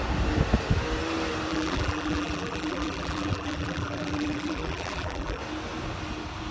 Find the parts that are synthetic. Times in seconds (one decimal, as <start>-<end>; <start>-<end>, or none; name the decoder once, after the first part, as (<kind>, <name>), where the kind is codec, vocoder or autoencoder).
1.5-5.4 (vocoder, BigVGAN v2)

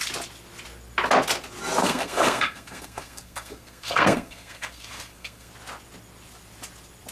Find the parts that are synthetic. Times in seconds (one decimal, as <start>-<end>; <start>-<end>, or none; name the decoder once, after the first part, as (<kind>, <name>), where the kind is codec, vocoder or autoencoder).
1.8-5.5 (codec, SNAC)

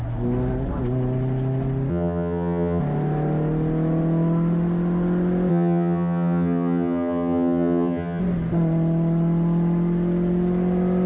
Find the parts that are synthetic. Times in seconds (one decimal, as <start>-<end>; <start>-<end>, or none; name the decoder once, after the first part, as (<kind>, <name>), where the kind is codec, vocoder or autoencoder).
1.9-2.8 (vocoder, HiFi-GAN); 5.5-8.2

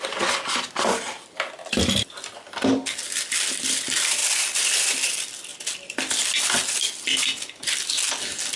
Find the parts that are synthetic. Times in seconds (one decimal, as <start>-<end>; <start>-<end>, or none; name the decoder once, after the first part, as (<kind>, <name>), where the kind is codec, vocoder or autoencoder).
none

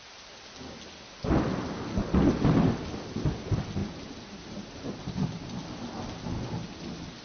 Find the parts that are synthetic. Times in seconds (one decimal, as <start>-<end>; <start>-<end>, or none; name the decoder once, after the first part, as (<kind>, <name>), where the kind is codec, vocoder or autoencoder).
3.8-5.7 (vocoder, BigVGAN v2)

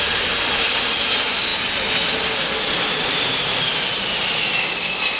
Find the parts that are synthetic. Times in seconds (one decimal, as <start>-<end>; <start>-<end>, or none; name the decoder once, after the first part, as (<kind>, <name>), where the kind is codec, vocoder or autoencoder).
none

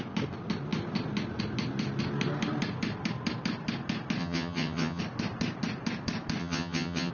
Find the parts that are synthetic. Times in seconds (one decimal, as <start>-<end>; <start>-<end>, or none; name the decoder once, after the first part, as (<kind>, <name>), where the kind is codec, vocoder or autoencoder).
4.2-5.0 (vocoder, HiFi-GAN); 6.4-7.1

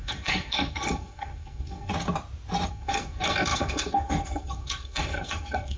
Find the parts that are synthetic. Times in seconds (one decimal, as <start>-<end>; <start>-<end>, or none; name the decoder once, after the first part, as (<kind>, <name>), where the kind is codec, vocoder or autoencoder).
0.0-1.9 (codec, SNAC); 2.7-5.8